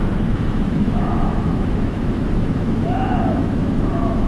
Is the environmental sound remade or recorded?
remade